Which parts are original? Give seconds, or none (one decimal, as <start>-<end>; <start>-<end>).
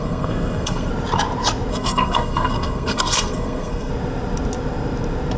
0.9-1.7; 3.9-5.4